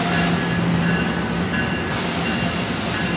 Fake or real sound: real